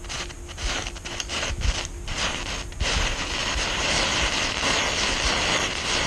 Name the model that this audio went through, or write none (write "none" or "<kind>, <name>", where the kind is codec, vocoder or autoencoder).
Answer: vocoder, BigVGAN v2